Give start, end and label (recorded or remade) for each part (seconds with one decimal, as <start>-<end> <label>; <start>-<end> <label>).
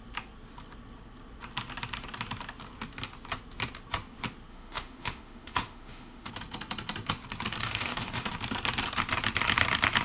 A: 0.0-4.5 recorded; 4.5-6.3 remade; 6.3-7.6 recorded; 7.6-8.3 remade; 8.3-10.0 recorded